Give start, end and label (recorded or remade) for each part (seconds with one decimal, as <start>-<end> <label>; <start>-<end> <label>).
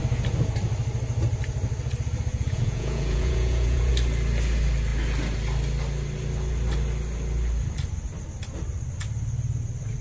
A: 0.0-2.3 recorded; 2.3-3.9 remade; 3.9-10.0 recorded